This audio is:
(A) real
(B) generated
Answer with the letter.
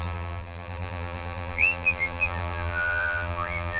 B